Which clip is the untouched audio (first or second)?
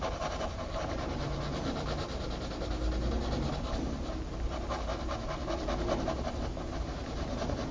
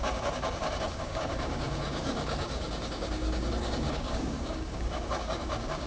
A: first